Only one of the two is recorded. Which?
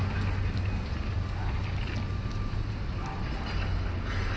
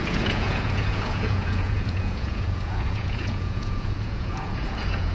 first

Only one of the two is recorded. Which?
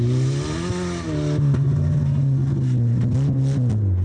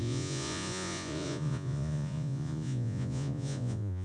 first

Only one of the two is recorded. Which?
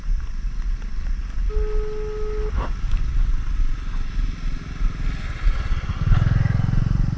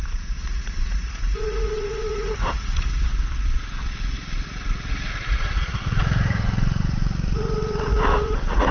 first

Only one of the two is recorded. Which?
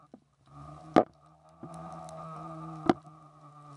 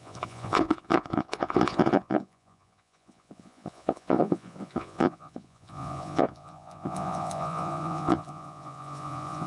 first